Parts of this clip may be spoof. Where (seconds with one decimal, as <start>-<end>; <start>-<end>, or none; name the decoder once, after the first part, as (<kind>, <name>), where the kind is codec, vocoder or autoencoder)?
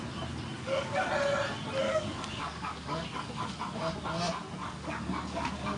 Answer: 0.6-1.1 (codec, DAC); 1.8-3.6; 4.6-5.8